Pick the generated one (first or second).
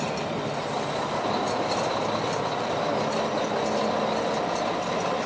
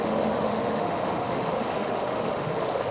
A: second